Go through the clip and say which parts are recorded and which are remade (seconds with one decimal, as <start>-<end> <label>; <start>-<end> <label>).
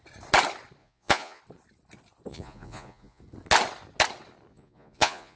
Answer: 0.0-0.8 recorded; 0.8-1.4 remade; 1.4-2.3 recorded; 2.3-3.2 remade; 3.2-4.5 recorded; 4.5-5.4 remade